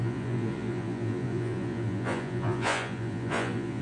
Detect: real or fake fake